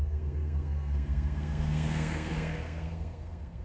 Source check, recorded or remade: remade